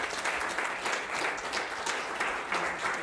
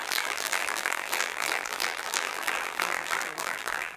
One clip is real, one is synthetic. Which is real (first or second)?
first